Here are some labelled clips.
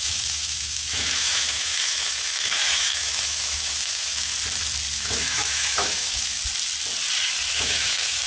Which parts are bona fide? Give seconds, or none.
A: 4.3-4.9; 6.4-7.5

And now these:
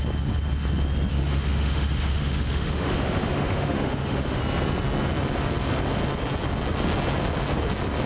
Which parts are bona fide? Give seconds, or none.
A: 0.0-1.1; 4.4-8.1

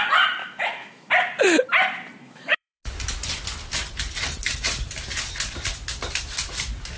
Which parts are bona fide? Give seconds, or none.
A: 0.0-0.4; 1.1-2.2; 2.8-7.0

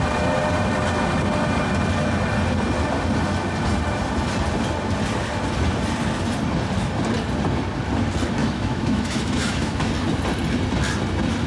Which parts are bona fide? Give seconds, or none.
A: 0.0-8.4; 9.9-11.5

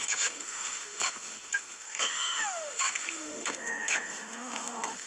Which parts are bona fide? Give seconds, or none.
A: none

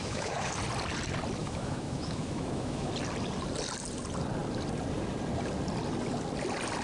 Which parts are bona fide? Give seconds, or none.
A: 0.5-1.4; 2.9-6.8

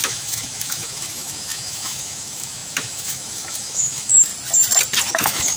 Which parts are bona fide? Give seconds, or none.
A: 4.3-5.1